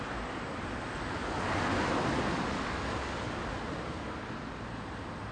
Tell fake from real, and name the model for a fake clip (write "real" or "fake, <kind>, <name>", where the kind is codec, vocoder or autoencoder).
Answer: real